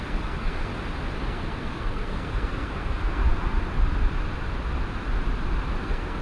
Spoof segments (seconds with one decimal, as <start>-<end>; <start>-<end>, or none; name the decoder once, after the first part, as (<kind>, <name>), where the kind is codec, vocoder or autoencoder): 0.0-0.7 (codec, SNAC); 1.2-3.2; 5.8-6.2